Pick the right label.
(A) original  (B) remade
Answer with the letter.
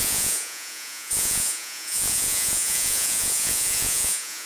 B